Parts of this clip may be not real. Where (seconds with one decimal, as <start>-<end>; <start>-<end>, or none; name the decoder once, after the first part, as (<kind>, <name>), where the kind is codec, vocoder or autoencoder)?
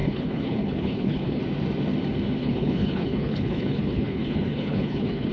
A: 0.0-1.4 (codec, HILCodec); 2.4-5.3